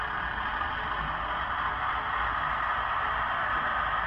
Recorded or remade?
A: recorded